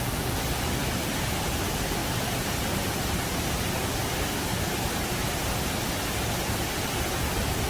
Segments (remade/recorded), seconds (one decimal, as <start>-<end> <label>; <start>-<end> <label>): 0.0-7.7 recorded